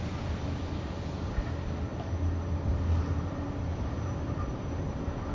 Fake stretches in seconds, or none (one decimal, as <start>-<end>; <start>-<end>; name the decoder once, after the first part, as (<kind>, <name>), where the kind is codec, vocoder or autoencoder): none

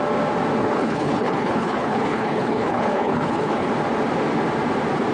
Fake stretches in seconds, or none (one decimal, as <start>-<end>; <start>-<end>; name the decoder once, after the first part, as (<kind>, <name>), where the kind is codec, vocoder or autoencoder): 0.6-3.7 (codec, HILCodec)

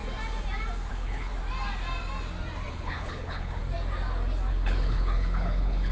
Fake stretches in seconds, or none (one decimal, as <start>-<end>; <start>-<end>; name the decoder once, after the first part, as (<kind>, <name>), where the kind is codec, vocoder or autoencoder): 0.9-1.3 (codec, HILCodec); 2.7-3.6; 4.5-5.9